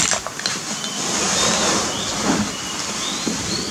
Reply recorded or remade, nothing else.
recorded